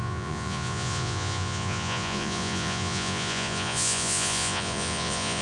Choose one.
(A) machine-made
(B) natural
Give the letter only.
A